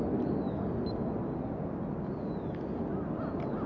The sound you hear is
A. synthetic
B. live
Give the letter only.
B